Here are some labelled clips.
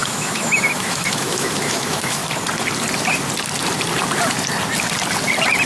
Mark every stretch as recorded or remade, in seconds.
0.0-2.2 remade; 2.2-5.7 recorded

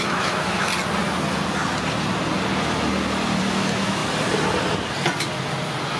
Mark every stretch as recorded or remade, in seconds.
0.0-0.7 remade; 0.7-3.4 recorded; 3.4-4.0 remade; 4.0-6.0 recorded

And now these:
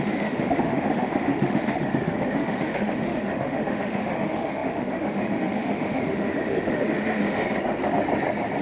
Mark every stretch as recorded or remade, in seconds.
0.0-7.4 remade; 7.4-8.6 recorded